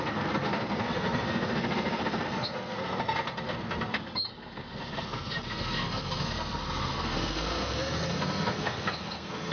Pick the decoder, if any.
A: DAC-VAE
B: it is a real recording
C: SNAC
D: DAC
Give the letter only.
C